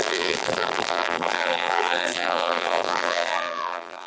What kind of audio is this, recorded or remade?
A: remade